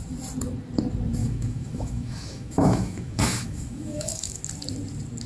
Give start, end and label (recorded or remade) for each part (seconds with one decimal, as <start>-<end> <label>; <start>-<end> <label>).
0.0-1.2 recorded; 1.2-4.4 remade; 4.4-5.3 recorded